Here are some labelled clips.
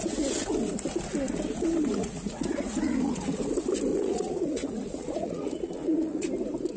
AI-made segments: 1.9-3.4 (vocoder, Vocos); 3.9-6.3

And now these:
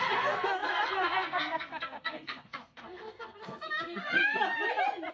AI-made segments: 0.0-4.2 (codec, SNAC)

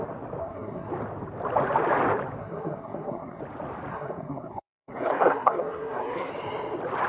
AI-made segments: 0.4-0.9 (codec, SNAC); 2.4-3.4; 3.9-6.3

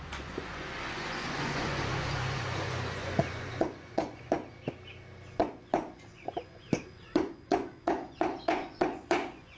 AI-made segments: 0.0-4.6 (vocoder, Vocos); 5.4-9.6

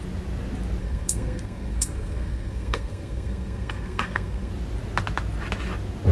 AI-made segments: 0.8-4.5 (codec, SNAC)

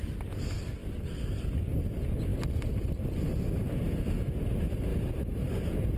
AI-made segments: 4.9-5.4 (autoencoder, DAC-VAE)

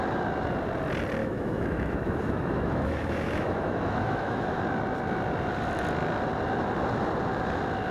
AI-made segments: 1.2-4.6 (autoencoder, DAC-VAE)

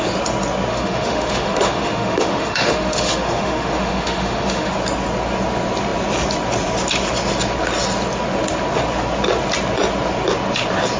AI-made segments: 0.7-4.7 (autoencoder, DAC-VAE)